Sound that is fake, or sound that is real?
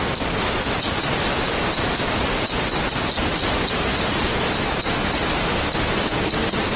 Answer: real